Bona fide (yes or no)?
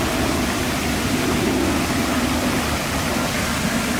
yes